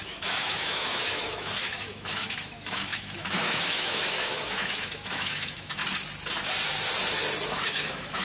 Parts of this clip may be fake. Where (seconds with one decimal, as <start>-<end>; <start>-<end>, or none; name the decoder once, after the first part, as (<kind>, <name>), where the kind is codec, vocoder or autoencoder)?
0.0-5.8 (autoencoder, DAC-VAE); 7.5-8.2